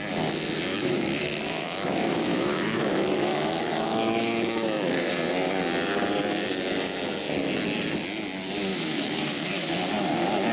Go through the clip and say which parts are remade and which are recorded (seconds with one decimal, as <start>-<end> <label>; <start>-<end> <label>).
0.0-0.7 recorded; 0.7-5.1 remade; 5.1-8.7 recorded; 8.7-9.7 remade; 9.7-10.5 recorded